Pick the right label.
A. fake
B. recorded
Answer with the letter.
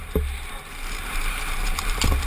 A